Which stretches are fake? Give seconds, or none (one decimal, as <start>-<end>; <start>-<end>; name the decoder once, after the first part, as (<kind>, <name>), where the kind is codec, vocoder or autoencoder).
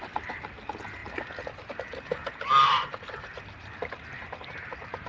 none